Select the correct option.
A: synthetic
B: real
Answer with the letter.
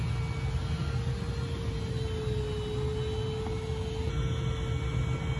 B